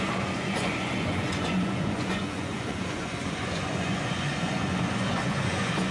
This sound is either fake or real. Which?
fake